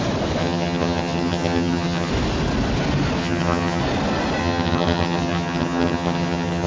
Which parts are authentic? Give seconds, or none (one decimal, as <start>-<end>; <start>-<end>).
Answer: 0.0-0.4; 2.1-3.2; 3.8-4.4